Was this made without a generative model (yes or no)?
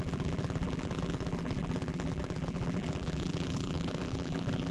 no